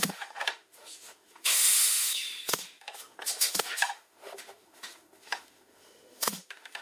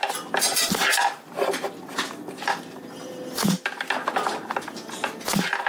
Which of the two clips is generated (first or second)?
first